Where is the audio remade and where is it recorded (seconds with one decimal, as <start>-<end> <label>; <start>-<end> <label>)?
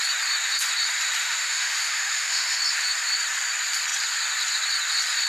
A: 0.0-1.2 recorded; 1.2-2.6 remade; 2.6-5.3 recorded